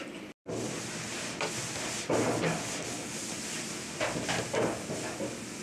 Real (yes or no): yes